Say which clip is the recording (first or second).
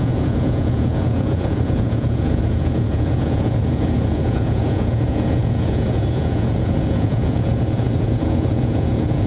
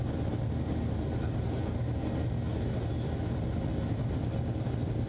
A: second